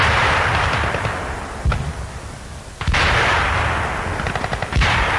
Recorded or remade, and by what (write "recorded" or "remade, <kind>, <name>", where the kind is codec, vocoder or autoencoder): remade, vocoder, BigVGAN v2